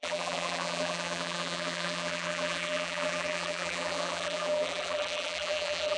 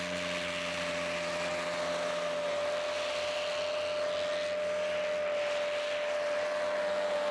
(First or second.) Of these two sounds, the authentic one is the second